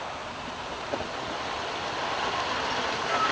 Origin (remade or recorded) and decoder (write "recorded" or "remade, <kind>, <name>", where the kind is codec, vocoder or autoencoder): recorded